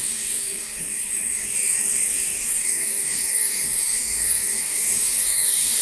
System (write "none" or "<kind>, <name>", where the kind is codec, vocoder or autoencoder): codec, DAC